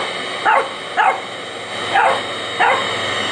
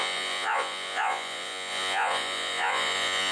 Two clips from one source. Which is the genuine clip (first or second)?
first